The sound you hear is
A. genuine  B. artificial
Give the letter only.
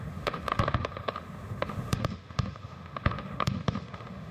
B